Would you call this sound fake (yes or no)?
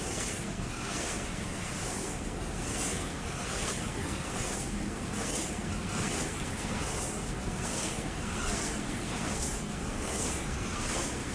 yes